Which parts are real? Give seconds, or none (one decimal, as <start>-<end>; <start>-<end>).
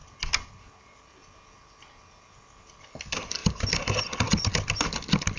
0.0-3.4; 4.5-5.4